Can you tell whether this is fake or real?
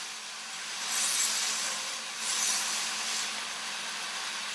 fake